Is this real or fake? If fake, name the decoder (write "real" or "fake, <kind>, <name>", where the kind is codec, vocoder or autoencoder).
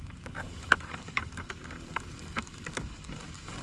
fake, codec, DAC